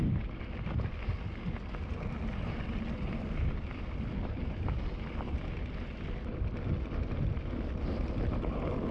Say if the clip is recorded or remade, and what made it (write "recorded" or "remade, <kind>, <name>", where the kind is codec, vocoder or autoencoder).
recorded